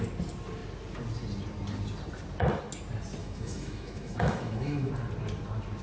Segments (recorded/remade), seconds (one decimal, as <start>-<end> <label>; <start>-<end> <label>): 0.0-3.2 recorded; 3.2-4.9 remade; 4.9-5.8 recorded